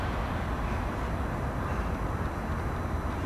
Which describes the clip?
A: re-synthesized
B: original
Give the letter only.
B